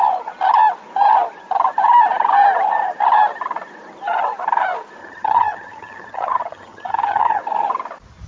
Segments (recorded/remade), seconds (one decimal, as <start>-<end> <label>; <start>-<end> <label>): 0.0-5.0 recorded; 5.0-7.4 remade; 7.4-8.3 recorded